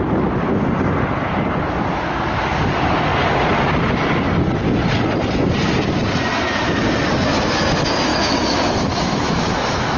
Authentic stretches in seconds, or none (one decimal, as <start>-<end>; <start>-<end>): 0.0-8.1

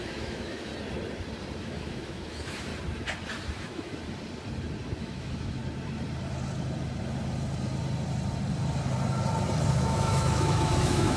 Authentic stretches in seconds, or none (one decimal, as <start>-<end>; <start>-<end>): 0.7-1.6; 2.7-3.6; 4.0-5.0; 5.6-9.7